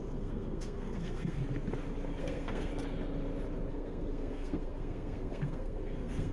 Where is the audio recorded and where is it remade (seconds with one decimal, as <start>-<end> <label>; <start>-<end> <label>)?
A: 0.0-1.4 remade; 1.4-2.2 recorded; 2.2-2.7 remade; 2.7-3.7 recorded; 3.7-6.3 remade